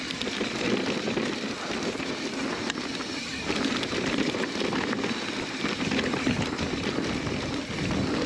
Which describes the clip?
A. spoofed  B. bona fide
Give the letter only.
B